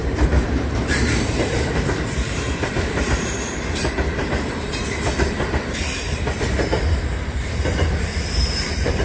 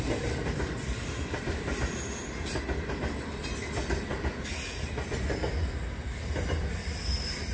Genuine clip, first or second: second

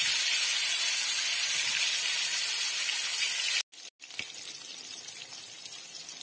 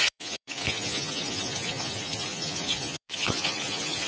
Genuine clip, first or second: first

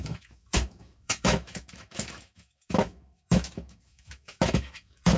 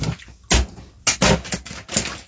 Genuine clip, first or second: second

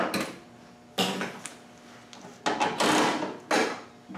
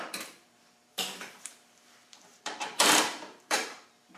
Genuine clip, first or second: first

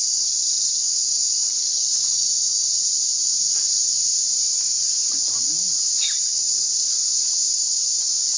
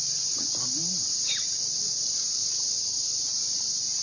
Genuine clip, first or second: first